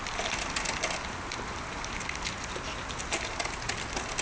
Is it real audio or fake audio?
real